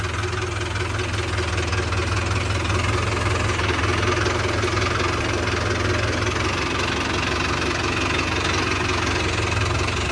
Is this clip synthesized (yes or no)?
no